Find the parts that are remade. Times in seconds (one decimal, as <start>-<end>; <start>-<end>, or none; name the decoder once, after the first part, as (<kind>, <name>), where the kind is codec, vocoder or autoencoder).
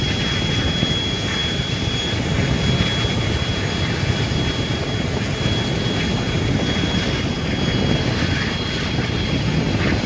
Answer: none